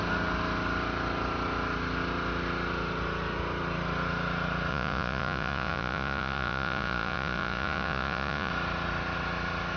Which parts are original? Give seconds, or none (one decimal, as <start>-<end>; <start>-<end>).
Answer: 0.0-4.7; 8.5-9.8